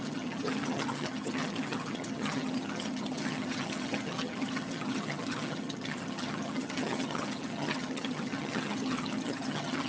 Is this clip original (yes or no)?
no